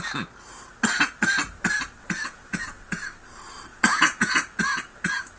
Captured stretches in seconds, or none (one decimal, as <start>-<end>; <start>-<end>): 0.0-2.0; 2.8-3.7; 4.3-5.4